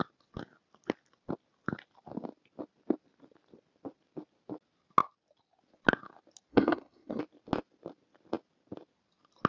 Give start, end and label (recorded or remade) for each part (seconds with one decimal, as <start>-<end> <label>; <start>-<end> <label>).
0.0-6.5 recorded; 6.5-7.2 remade; 7.2-9.5 recorded